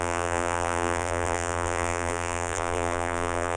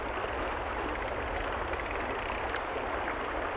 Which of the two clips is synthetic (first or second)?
first